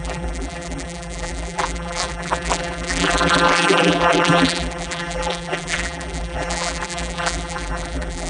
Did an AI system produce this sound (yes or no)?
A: yes